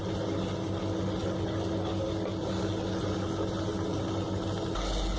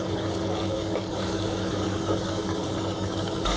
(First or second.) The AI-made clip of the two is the second